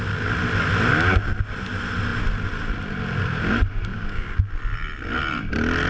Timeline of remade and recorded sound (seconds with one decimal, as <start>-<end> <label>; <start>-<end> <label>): 0.0-3.9 recorded; 3.9-4.5 remade; 4.5-5.9 recorded

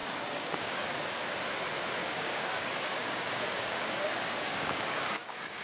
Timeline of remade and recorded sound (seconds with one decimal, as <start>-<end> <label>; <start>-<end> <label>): 0.0-0.8 remade; 0.8-2.0 recorded; 2.0-5.6 remade